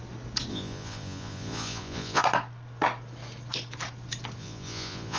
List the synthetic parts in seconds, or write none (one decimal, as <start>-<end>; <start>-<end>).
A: 0.5-2.2; 4.4-5.2